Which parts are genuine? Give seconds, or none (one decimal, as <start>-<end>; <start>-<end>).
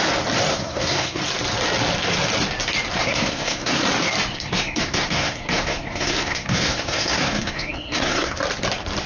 0.0-0.5; 1.2-3.0; 3.8-4.3; 8.4-9.1